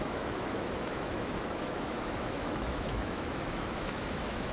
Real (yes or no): no